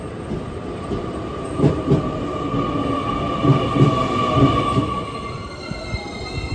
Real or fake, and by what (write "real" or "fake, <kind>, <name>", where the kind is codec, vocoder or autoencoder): real